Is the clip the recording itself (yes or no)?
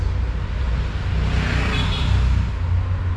yes